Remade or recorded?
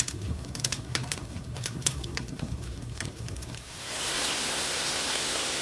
remade